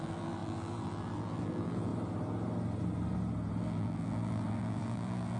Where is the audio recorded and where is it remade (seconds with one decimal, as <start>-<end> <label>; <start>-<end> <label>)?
0.0-1.9 remade; 1.9-3.6 recorded; 3.6-5.4 remade